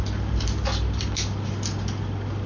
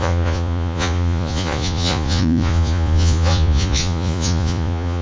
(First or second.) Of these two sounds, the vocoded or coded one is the second